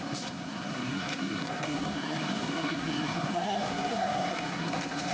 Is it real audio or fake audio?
fake